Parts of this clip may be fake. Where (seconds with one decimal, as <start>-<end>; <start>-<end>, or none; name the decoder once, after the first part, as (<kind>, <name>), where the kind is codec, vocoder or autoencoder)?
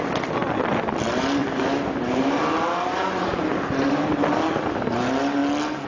none